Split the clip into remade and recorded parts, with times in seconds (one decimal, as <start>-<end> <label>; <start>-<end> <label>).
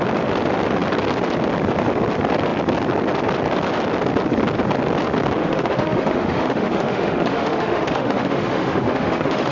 0.0-5.4 recorded; 5.4-9.5 remade